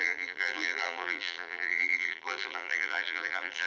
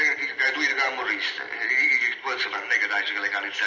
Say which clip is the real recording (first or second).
second